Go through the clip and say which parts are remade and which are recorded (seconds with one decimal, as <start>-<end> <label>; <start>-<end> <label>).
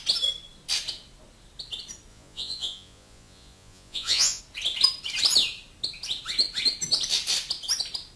0.0-2.1 recorded; 2.1-4.4 remade; 4.4-8.2 recorded